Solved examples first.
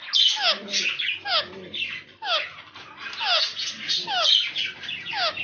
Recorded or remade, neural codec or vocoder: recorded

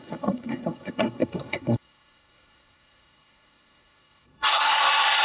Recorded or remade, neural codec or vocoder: remade, codec, SNAC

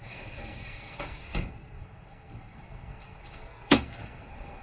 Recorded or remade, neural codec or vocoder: remade, codec, SNAC